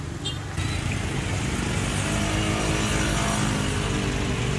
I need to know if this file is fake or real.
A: real